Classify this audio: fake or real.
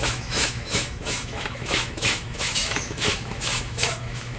fake